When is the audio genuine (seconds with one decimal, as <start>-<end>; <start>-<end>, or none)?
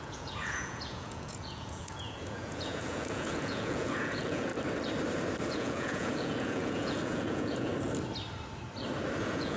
4.5-5.5; 7.7-9.2